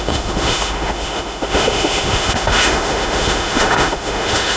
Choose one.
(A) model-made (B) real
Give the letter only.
A